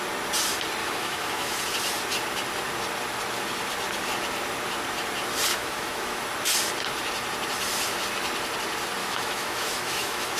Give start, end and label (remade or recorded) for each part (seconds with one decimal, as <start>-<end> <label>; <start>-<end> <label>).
0.0-0.8 recorded; 0.8-1.6 remade; 1.6-5.5 recorded; 5.5-6.2 remade; 6.2-9.0 recorded; 9.0-10.4 remade